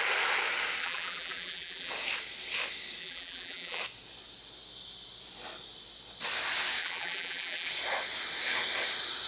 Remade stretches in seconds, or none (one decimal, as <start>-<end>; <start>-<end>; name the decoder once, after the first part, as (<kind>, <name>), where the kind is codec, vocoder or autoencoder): 0.8-1.9 (vocoder, BigVGAN v2); 3.0-3.8; 6.8-7.7